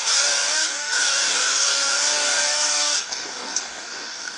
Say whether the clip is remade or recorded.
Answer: remade